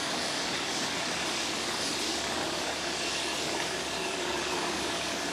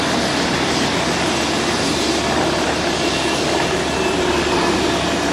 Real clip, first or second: second